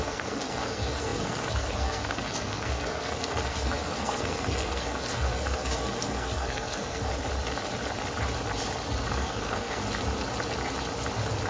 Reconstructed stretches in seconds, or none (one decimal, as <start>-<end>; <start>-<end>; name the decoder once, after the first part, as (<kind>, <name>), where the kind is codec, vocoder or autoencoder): 0.0-7.1 (codec, SNAC); 9.1-9.8